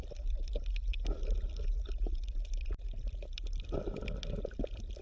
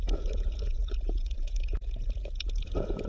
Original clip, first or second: first